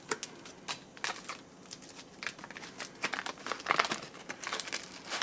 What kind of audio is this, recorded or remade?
recorded